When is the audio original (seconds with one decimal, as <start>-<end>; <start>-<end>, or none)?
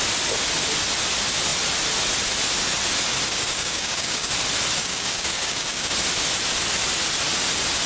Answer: 0.0-3.3; 4.3-4.8; 5.9-7.9